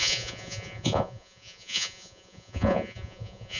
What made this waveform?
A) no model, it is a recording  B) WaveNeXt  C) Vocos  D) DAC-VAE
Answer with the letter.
C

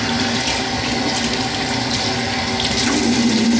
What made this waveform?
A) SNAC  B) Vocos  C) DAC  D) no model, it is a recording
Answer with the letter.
D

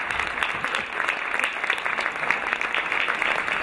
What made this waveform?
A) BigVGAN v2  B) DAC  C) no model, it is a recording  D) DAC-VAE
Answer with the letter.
C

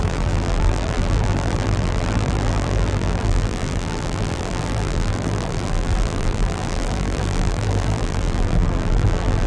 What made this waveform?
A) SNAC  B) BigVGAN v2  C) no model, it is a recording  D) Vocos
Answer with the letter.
B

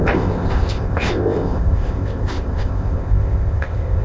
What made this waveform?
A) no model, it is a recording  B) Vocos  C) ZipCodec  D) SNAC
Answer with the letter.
C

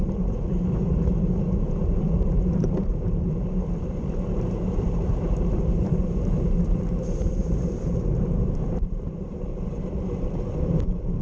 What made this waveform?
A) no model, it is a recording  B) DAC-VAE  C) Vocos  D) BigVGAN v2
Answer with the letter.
D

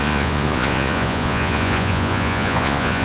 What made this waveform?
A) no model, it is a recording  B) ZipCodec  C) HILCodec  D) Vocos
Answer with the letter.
D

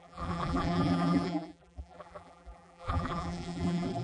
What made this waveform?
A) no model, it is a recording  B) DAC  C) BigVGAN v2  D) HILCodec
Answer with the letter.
C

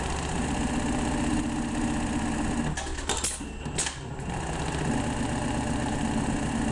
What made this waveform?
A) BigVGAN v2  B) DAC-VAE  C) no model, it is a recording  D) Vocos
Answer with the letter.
C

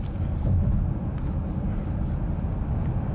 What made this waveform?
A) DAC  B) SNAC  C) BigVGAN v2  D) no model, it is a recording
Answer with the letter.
D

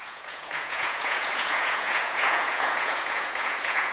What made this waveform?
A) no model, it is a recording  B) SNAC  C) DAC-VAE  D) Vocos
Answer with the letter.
D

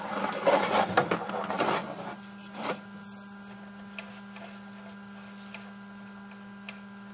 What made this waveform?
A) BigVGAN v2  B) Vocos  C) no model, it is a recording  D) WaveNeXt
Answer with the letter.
C